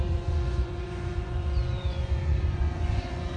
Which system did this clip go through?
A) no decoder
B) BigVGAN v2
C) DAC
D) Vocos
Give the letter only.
D